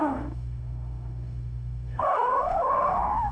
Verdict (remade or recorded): remade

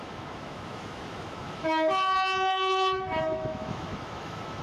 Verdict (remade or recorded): remade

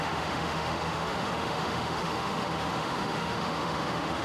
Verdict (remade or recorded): remade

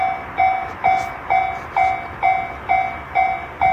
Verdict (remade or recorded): recorded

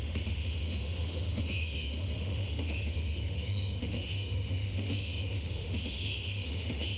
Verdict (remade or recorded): remade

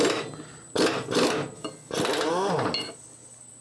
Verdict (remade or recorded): recorded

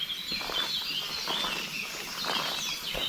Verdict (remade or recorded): recorded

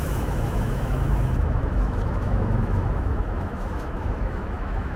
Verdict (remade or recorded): remade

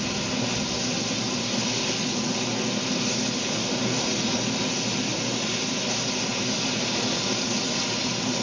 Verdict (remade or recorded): recorded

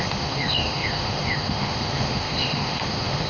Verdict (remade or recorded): remade